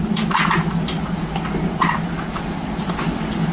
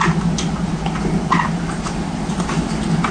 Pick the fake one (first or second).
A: second